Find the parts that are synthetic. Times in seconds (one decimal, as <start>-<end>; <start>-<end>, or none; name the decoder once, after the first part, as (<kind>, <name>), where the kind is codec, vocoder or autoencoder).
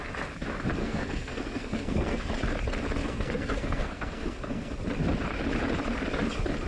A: 0.8-2.3 (codec, SNAC); 3.0-4.7